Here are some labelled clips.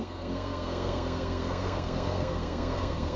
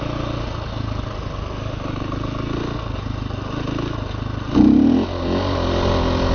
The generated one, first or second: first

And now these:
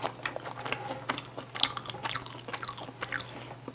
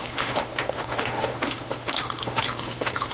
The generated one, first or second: second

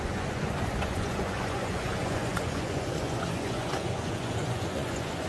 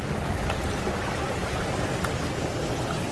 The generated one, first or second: first